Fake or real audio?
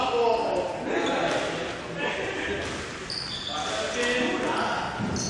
real